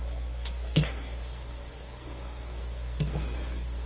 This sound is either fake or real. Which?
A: fake